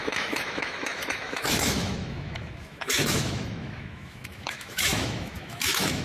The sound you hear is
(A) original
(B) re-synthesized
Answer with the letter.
B